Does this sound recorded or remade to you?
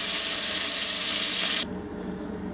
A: recorded